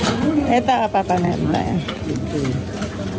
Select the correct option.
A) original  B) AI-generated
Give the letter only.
A